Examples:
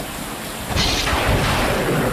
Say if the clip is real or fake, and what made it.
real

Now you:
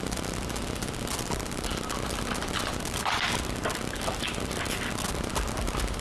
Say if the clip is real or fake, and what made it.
real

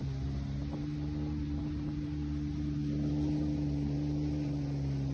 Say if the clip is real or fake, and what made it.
real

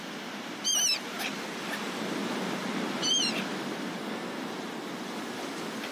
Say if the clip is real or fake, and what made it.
real